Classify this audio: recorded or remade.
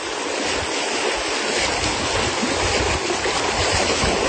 recorded